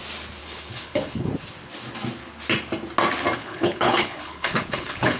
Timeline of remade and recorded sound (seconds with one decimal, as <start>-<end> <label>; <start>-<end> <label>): 0.0-0.4 recorded; 0.4-1.3 remade; 1.3-3.4 recorded; 3.4-5.2 remade